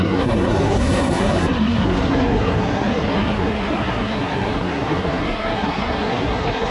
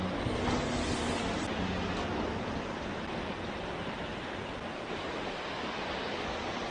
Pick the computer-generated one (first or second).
first